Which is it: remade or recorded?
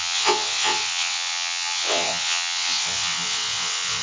remade